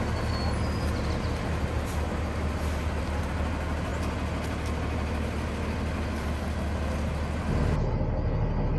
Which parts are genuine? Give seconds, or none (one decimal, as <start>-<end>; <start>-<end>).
0.0-8.8